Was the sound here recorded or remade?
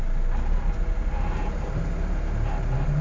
recorded